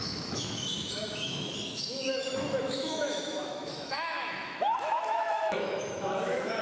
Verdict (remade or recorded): remade